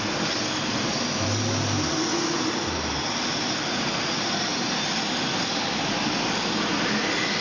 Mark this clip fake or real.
real